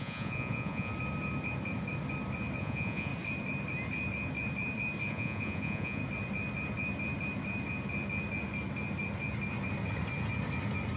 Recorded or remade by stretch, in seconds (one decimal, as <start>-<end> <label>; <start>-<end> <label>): 0.0-0.9 remade; 0.9-2.6 recorded; 2.6-3.1 remade; 3.1-5.1 recorded; 5.1-6.0 remade; 6.0-11.0 recorded